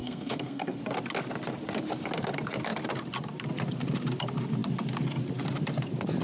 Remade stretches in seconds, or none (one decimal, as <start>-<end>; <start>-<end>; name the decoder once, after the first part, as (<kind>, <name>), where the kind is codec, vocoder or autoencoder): 0.0-0.8 (codec, SNAC)